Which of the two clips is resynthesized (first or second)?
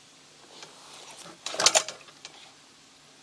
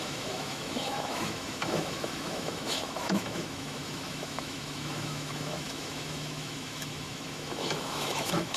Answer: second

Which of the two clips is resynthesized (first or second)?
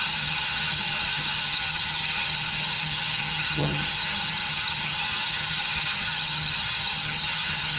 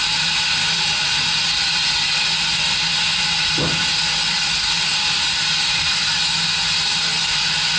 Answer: first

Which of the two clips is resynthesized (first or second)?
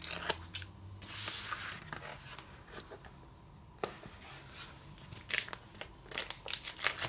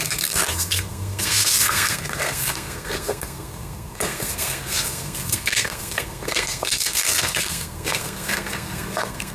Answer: second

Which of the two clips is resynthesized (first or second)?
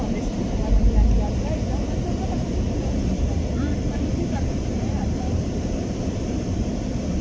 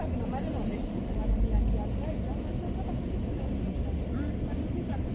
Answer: first